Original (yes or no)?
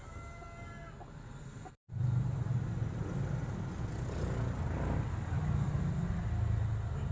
yes